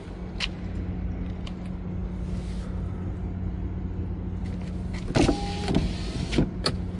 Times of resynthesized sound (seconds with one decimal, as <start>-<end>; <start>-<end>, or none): none